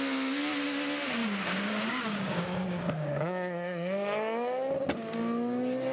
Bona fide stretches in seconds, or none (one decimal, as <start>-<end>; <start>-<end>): 0.0-1.2; 4.7-5.9